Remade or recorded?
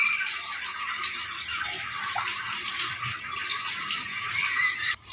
remade